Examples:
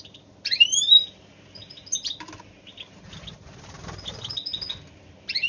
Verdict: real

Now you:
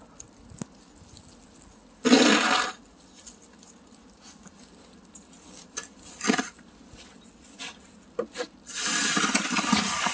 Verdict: real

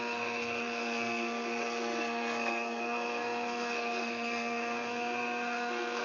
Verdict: fake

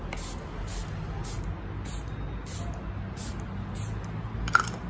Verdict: real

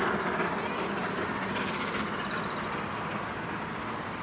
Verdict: real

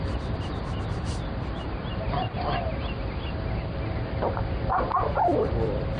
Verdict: real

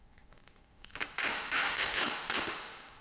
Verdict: fake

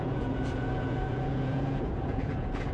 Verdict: fake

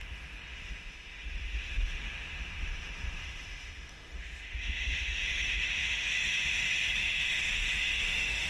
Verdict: fake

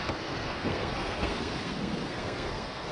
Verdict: fake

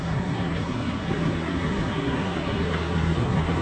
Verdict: fake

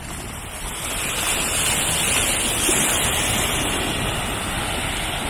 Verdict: real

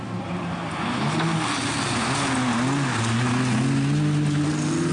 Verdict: real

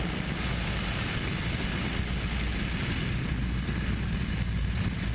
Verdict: real